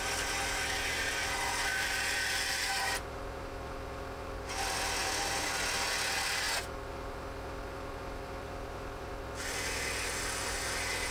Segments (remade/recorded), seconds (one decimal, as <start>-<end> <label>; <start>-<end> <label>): 0.0-1.7 recorded; 1.7-2.5 remade; 2.5-11.1 recorded